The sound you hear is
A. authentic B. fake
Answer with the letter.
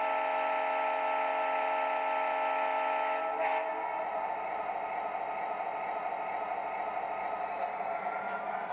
A